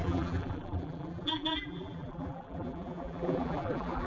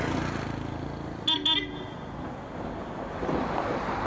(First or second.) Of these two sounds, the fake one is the first